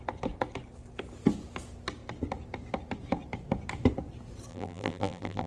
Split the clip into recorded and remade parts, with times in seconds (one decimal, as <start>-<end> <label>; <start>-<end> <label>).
0.0-4.5 recorded; 4.5-5.5 remade